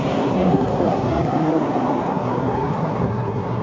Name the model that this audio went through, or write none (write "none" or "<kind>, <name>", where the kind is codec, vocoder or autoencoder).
codec, SNAC